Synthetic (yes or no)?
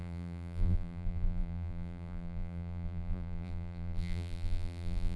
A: yes